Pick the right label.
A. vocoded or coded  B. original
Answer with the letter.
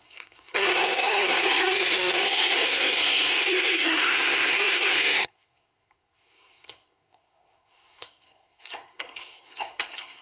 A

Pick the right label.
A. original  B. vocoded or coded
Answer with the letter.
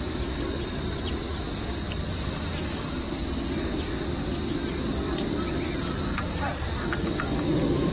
A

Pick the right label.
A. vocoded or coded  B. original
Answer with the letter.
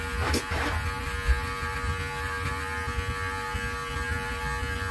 B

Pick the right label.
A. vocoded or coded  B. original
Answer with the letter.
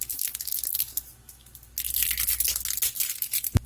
B